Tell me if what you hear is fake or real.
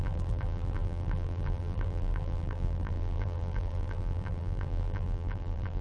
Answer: fake